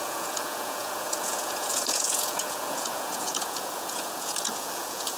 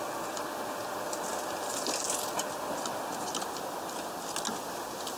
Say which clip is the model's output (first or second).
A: first